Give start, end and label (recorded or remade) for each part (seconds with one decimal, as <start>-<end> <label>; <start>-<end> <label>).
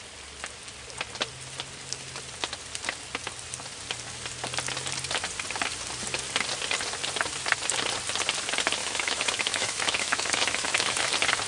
0.0-8.8 recorded; 8.8-11.1 remade; 11.1-11.5 recorded